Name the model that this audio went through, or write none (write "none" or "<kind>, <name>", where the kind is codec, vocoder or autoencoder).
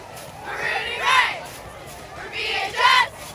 vocoder, BigVGAN v2